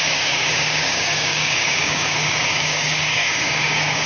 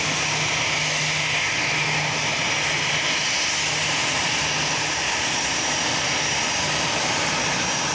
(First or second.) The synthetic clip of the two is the first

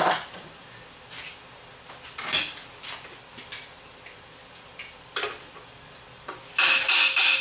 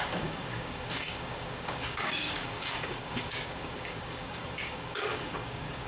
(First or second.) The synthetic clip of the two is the second